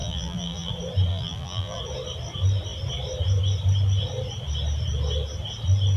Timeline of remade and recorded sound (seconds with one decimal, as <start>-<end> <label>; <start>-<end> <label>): 0.0-0.7 remade; 0.7-1.1 recorded; 1.1-1.8 remade; 1.8-6.0 recorded